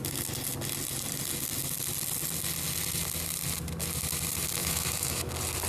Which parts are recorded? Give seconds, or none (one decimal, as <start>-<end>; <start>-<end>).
0.0-4.6; 5.3-5.7